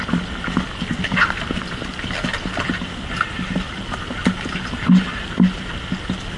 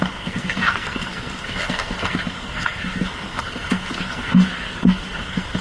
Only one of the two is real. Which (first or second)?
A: first